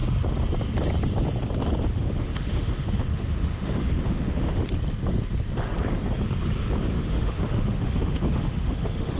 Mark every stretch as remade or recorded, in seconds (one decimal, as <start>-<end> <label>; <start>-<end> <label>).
0.0-1.9 recorded; 1.9-4.6 remade; 4.6-6.9 recorded; 6.9-9.2 remade